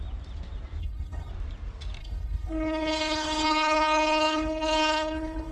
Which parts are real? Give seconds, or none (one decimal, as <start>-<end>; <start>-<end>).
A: 0.0-0.8; 1.3-2.0